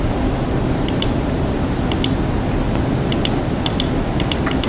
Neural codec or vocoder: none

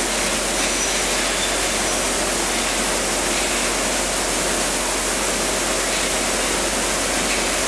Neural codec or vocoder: none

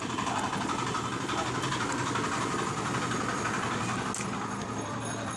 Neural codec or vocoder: none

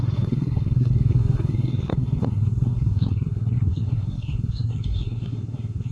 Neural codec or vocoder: codec, SNAC